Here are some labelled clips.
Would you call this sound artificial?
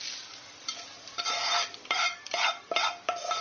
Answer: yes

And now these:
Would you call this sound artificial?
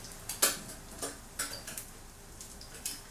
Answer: no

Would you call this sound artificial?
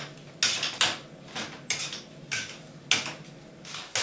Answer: no